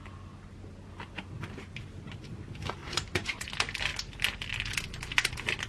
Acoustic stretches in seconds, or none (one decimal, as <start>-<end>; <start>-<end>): 0.0-2.8; 3.5-5.7